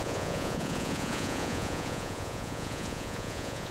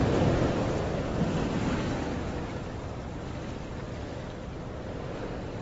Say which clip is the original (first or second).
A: second